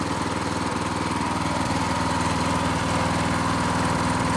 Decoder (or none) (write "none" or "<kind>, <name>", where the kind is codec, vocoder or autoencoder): none